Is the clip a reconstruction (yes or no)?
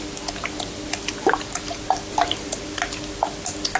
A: no